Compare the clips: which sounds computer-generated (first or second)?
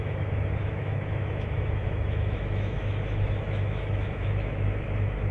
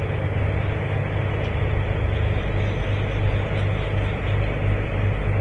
first